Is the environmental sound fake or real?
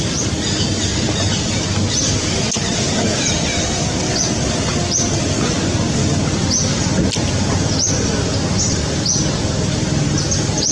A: real